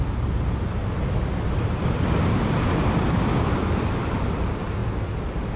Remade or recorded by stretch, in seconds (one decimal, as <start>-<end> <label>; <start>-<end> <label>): 0.0-0.8 recorded; 0.8-4.0 remade; 4.0-5.6 recorded